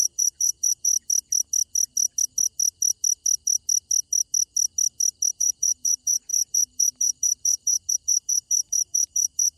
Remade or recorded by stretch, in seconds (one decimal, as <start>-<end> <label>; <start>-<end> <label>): 0.0-0.9 remade; 0.9-5.3 recorded; 5.3-9.6 remade